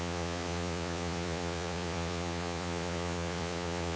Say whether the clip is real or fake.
fake